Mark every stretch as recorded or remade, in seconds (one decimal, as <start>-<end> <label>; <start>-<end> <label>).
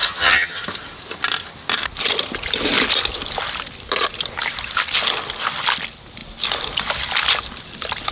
0.0-0.6 remade; 0.6-8.1 recorded